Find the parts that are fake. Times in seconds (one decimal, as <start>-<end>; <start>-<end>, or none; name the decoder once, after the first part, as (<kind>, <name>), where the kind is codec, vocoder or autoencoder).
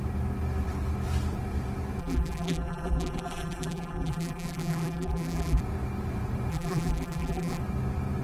2.0-5.6 (vocoder, BigVGAN v2); 6.5-7.6